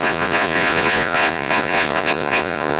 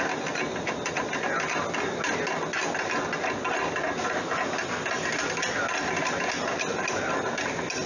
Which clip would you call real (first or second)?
second